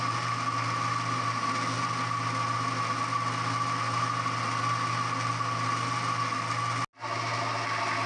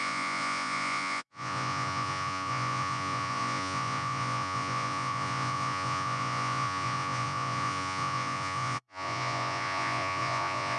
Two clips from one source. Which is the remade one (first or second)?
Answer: second